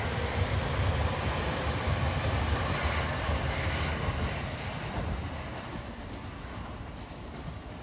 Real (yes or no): yes